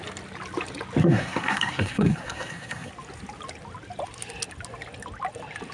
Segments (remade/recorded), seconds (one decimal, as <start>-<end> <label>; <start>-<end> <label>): 0.0-1.0 recorded; 1.0-2.9 remade; 2.9-5.7 recorded